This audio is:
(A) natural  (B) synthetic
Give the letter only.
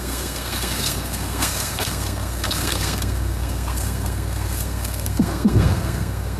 B